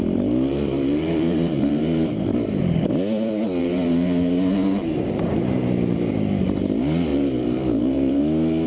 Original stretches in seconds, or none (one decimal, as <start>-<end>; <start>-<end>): 2.6-3.6; 6.1-7.1; 8.2-8.7

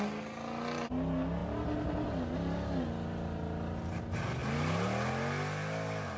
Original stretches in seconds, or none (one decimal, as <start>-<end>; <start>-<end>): 0.0-6.2

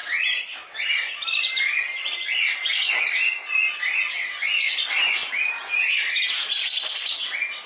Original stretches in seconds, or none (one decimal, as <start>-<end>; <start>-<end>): 0.0-7.7

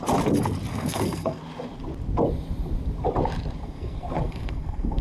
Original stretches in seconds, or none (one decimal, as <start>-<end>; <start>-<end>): 0.0-0.7; 1.4-3.6

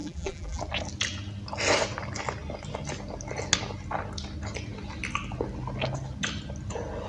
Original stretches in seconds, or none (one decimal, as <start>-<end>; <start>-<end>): 0.6-7.1